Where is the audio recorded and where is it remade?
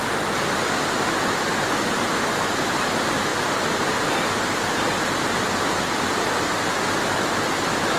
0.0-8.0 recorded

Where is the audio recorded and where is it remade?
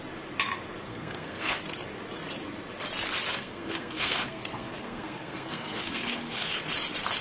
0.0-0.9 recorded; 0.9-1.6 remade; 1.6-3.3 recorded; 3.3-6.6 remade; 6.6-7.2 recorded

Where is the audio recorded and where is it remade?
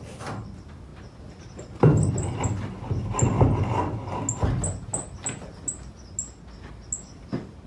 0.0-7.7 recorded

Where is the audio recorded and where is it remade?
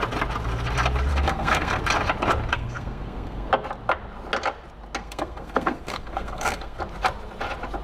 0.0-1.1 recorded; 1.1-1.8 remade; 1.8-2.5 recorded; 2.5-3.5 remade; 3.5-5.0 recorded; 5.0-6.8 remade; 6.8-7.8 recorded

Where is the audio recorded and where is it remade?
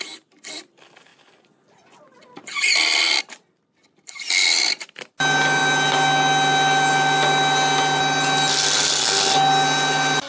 0.0-10.3 recorded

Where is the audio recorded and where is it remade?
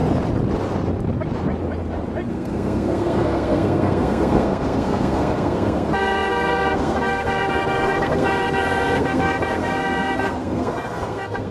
0.0-2.3 recorded; 2.3-11.5 remade